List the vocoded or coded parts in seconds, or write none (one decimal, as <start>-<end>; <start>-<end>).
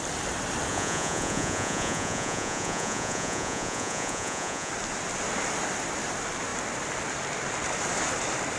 0.7-4.7